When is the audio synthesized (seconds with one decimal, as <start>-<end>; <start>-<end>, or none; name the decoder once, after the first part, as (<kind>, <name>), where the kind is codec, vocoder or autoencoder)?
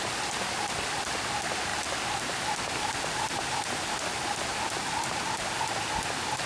none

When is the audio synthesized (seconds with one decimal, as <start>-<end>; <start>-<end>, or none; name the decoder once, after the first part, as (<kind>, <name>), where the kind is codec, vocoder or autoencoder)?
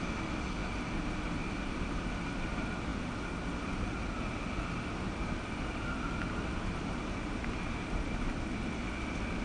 none